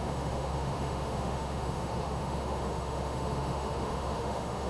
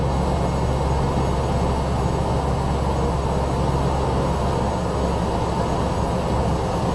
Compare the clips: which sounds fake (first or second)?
first